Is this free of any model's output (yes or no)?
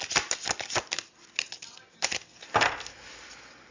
yes